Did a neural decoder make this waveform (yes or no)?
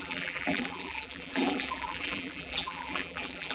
yes